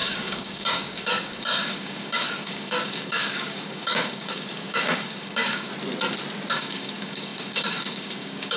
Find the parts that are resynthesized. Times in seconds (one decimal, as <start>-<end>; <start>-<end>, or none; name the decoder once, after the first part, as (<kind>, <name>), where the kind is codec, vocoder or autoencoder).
0.0-5.7 (codec, DAC); 6.5-8.6